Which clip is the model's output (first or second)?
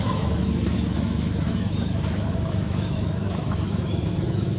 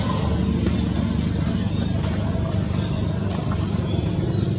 first